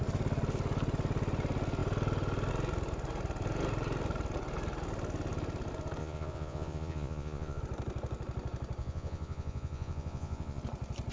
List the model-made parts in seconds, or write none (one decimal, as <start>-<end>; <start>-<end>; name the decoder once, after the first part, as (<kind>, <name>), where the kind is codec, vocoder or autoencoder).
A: 6.0-7.6 (vocoder, Vocos); 8.8-10.6